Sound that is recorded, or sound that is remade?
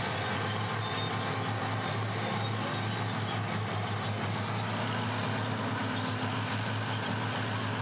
recorded